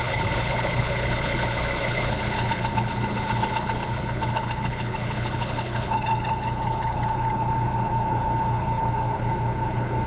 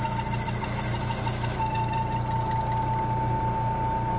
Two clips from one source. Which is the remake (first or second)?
first